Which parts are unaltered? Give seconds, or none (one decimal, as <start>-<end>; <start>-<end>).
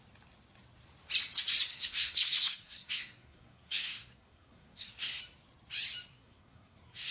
0.0-1.7; 5.2-6.1